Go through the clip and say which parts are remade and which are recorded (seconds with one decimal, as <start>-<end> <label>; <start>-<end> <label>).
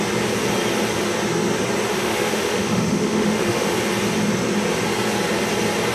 0.0-1.9 recorded; 1.9-3.7 remade; 3.7-5.9 recorded